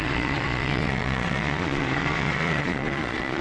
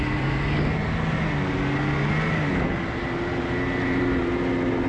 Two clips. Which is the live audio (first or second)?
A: second